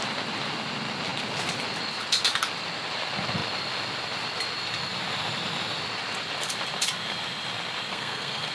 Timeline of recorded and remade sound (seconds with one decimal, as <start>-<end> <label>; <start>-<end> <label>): 0.0-7.9 recorded; 7.9-8.5 remade